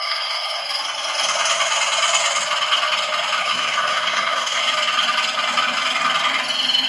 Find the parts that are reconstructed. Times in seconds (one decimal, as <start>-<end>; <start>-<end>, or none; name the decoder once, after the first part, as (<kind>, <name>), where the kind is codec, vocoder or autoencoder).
0.0-0.6 (codec, SNAC); 3.4-4.6